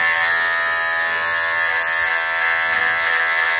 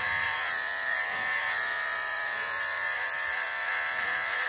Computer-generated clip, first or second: second